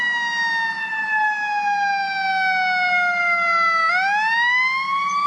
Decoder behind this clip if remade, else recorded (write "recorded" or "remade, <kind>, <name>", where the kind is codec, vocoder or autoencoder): recorded